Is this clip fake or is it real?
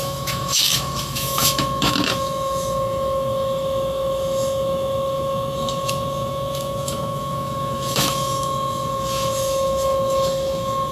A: fake